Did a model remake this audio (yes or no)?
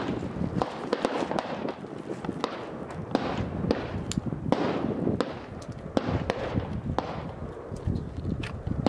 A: no